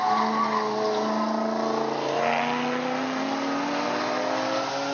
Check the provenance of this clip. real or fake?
real